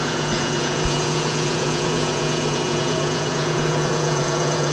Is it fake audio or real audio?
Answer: fake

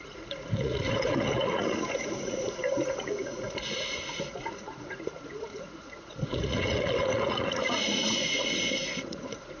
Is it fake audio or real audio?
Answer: fake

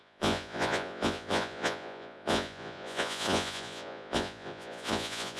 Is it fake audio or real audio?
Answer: fake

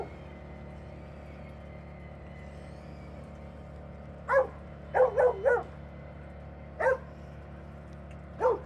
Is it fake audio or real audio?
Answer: real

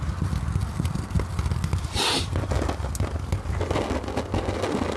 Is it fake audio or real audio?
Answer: real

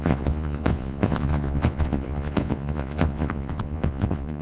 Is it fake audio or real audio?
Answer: fake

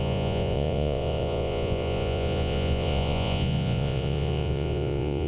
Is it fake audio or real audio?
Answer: fake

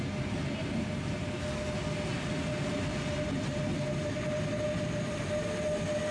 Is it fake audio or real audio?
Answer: real